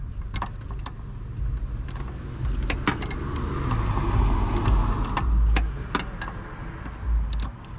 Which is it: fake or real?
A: real